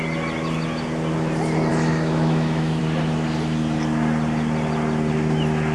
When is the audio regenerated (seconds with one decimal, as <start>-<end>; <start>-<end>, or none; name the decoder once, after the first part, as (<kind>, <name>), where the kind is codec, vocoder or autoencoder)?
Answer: 1.7-2.8 (autoencoder, DAC-VAE)